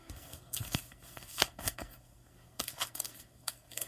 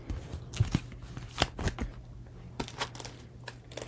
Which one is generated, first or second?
first